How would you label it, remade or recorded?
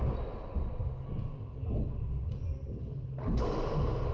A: recorded